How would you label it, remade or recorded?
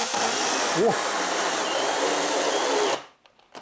recorded